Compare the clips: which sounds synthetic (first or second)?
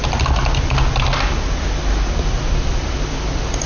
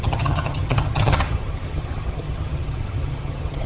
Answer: second